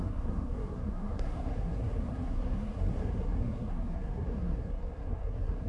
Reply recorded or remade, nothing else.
remade